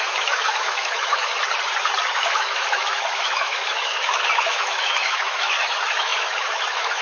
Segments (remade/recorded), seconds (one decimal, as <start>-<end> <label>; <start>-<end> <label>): 0.0-1.3 remade; 1.3-2.1 recorded; 2.1-7.0 remade